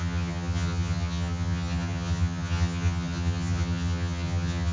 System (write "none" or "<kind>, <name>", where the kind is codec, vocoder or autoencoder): vocoder, HiFi-GAN